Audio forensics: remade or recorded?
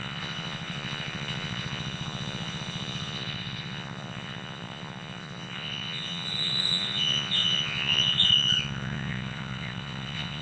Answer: remade